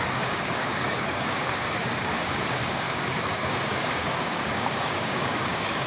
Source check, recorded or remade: remade